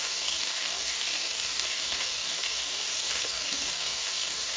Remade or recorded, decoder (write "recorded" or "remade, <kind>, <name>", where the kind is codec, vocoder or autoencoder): remade, codec, DAC